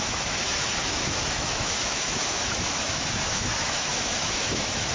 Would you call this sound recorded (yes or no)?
no